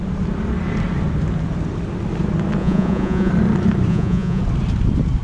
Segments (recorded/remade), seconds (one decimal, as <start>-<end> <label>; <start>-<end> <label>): 0.0-2.6 recorded; 2.6-3.3 remade; 3.3-3.9 recorded; 3.9-4.4 remade; 4.4-5.2 recorded